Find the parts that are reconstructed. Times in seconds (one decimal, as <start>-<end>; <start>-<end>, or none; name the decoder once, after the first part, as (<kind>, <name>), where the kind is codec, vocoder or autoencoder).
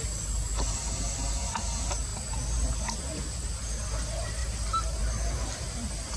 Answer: 2.1-2.6 (vocoder, BigVGAN v2)